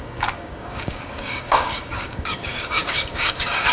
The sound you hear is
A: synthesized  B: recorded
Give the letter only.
A